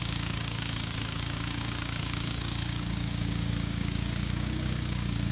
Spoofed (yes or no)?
yes